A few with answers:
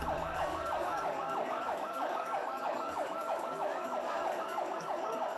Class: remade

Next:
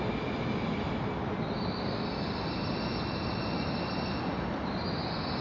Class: recorded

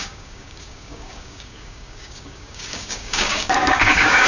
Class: remade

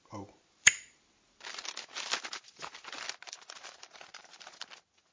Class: recorded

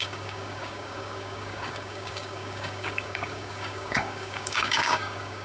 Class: remade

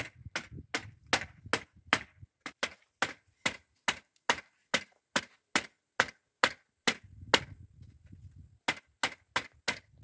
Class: recorded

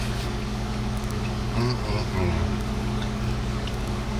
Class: remade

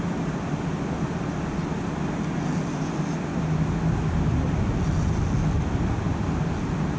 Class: recorded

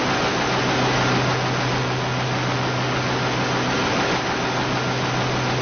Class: recorded